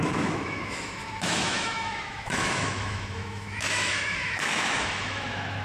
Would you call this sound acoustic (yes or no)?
no